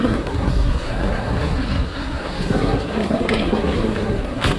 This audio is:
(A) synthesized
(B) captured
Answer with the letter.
A